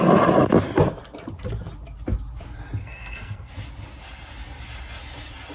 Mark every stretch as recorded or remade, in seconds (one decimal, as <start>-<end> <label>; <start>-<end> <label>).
0.0-2.8 recorded; 2.8-3.5 remade; 3.5-5.5 recorded